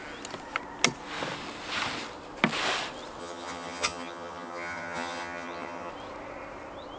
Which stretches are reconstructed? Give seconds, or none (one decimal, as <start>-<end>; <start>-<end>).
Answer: 3.2-5.9